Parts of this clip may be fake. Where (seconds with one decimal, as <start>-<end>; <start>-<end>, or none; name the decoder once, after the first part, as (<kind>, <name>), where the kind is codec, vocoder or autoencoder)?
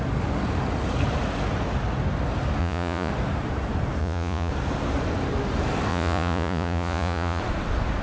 2.6-3.1 (vocoder, Vocos); 4.0-4.5; 5.9-7.4